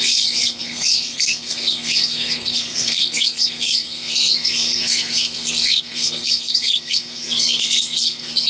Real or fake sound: fake